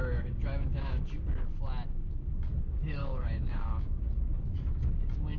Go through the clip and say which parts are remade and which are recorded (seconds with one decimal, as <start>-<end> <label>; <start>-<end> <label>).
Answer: 0.0-1.0 remade; 1.0-3.0 recorded; 3.0-4.0 remade; 4.0-5.4 recorded